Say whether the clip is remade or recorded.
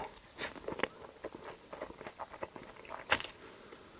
recorded